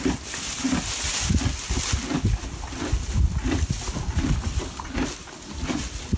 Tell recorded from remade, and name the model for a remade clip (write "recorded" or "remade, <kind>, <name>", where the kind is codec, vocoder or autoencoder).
recorded